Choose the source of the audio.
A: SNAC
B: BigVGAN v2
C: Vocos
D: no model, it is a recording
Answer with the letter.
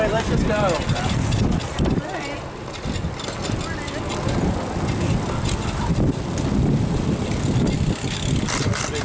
D